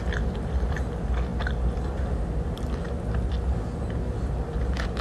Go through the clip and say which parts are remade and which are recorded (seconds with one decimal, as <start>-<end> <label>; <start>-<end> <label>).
0.0-5.0 recorded